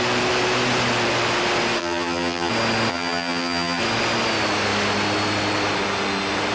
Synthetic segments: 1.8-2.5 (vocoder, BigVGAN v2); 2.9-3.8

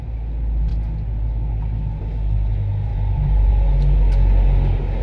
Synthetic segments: 2.9-3.5 (vocoder, BigVGAN v2)

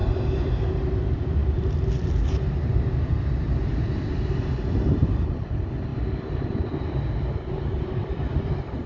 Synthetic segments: 0.0-5.9 (vocoder, BigVGAN v2); 7.8-8.9

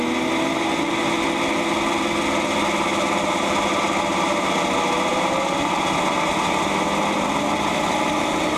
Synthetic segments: none